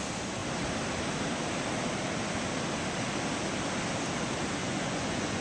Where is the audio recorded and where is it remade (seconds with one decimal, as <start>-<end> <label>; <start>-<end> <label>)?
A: 0.0-4.6 recorded; 4.6-5.4 remade